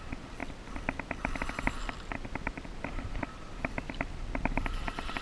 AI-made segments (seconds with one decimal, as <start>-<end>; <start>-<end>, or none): none